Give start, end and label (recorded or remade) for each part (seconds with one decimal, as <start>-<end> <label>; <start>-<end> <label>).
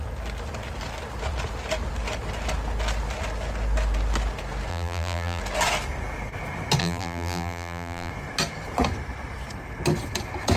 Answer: 0.0-4.7 recorded; 4.7-5.4 remade; 5.4-6.8 recorded; 6.8-8.1 remade; 8.1-10.6 recorded